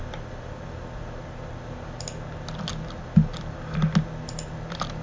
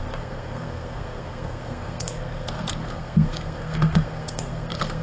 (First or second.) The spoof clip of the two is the second